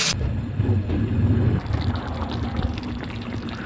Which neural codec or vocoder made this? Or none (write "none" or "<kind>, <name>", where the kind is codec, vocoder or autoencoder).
none